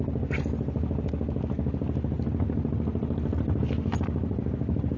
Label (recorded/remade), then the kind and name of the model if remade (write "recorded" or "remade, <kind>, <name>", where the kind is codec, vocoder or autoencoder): recorded